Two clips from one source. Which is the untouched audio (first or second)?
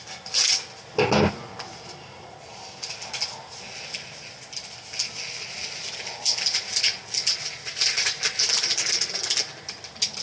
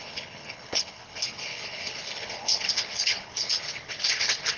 first